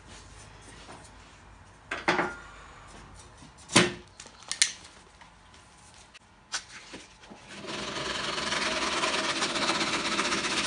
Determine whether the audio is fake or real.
real